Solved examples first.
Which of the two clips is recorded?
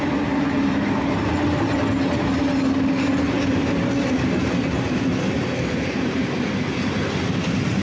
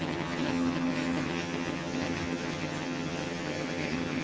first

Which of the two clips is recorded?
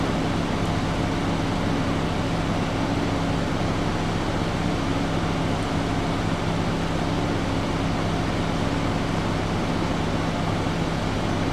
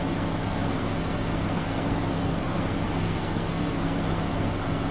first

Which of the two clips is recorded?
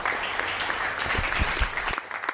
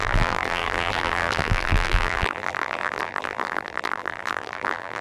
first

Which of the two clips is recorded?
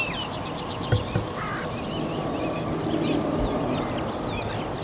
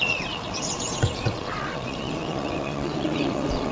first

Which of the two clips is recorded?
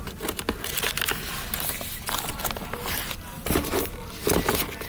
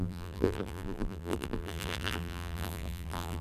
first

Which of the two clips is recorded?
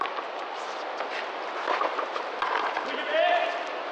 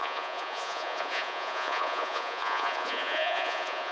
first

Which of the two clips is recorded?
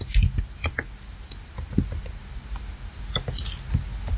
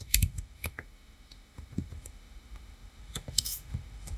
first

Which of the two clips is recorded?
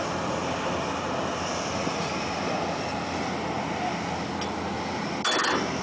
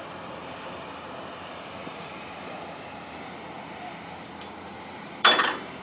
first